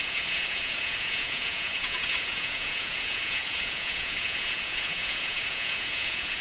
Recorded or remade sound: remade